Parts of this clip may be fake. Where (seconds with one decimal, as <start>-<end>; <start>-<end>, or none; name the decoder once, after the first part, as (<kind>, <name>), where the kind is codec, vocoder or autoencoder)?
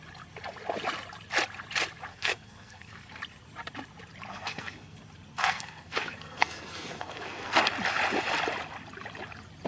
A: 2.1-3.2 (codec, SNAC); 4.3-5.0; 5.4-7.6